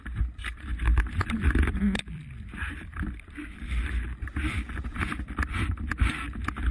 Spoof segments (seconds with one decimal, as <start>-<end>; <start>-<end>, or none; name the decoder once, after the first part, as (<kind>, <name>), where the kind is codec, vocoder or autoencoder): 0.7-3.7 (vocoder, BigVGAN v2); 4.9-5.9